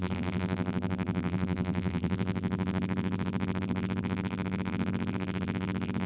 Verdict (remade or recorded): remade